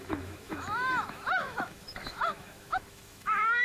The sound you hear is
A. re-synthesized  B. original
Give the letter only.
A